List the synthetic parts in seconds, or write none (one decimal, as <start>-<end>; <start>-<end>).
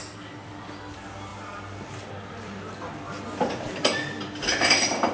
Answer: none